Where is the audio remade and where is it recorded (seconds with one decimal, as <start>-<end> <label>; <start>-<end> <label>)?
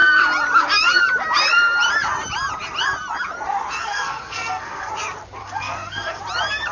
0.0-3.8 recorded; 3.8-4.9 remade; 4.9-5.4 recorded; 5.4-6.2 remade; 6.2-6.7 recorded